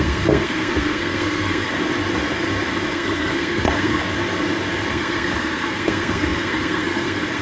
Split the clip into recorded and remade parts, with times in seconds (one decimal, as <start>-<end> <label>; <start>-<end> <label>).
0.0-1.7 remade; 1.7-2.9 recorded; 2.9-4.0 remade; 4.0-4.9 recorded; 4.9-7.4 remade